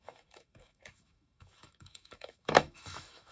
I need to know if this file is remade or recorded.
remade